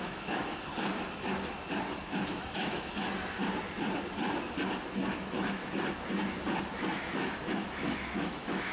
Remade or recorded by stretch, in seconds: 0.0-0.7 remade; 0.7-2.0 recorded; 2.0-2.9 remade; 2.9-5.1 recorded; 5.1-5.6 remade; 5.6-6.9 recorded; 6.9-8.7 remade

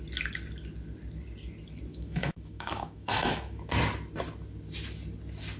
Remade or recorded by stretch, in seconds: 0.0-1.9 recorded; 1.9-3.7 remade; 3.7-5.6 recorded

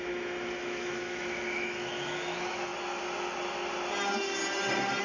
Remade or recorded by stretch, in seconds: 0.0-2.7 remade; 2.7-5.0 recorded

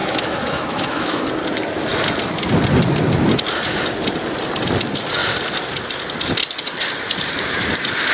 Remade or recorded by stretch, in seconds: 0.0-1.2 remade; 1.2-8.1 recorded

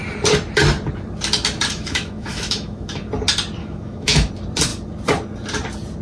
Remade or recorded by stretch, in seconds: 0.0-1.7 recorded; 1.7-3.1 remade; 3.1-3.6 recorded; 3.6-4.3 remade; 4.3-6.0 recorded

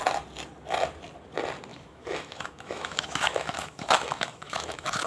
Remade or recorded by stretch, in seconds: 0.0-1.7 recorded; 1.7-5.1 remade